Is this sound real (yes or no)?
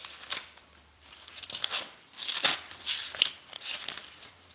no